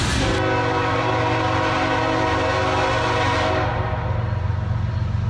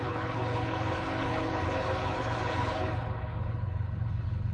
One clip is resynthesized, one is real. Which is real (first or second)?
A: first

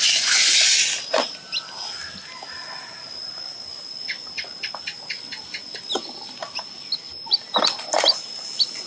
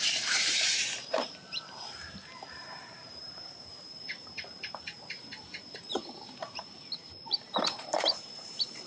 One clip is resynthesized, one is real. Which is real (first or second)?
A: first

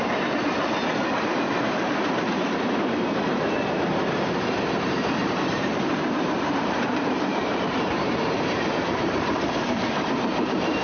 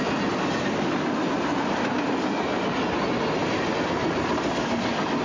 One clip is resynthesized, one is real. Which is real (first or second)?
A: second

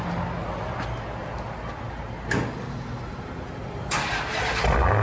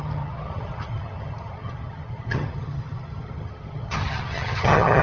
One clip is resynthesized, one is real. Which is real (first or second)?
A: first